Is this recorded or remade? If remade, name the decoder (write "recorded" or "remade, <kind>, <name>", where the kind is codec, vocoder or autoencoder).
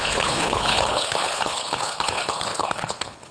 remade, codec, HILCodec